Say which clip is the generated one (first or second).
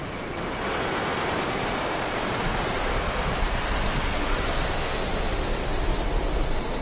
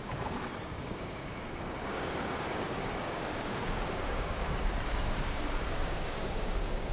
second